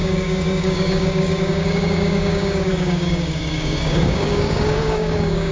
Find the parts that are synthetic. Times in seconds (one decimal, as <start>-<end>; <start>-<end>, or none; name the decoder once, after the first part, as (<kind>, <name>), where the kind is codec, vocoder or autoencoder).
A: 0.0-5.5 (codec, DAC)